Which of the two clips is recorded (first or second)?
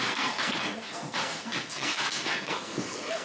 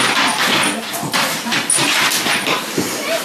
second